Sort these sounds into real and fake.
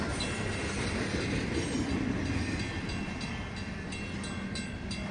real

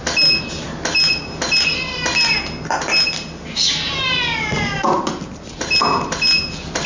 real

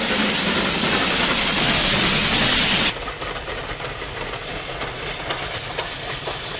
real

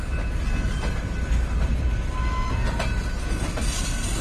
real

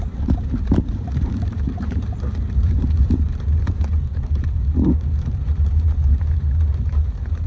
fake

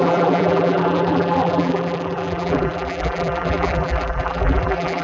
fake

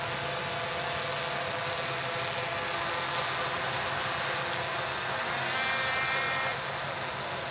real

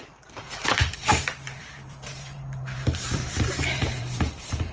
fake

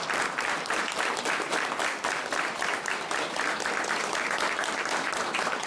fake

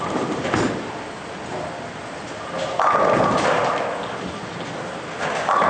real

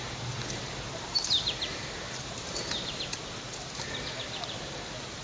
fake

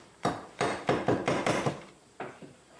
fake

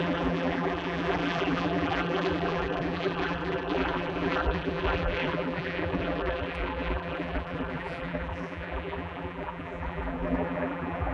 fake